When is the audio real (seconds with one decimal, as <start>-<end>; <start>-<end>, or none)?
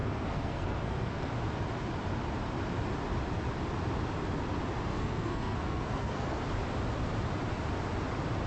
1.3-4.9; 6.4-8.5